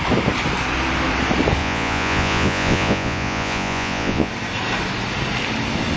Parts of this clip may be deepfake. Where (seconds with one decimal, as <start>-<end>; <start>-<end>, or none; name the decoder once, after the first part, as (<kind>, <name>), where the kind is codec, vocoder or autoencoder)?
1.6-4.3 (vocoder, Vocos)